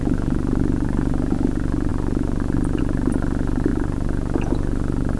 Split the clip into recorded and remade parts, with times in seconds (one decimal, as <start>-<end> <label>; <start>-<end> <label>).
0.0-5.2 recorded